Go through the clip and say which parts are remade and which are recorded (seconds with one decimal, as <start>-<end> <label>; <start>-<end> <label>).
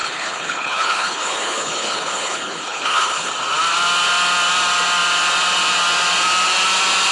0.0-3.3 remade; 3.3-7.1 recorded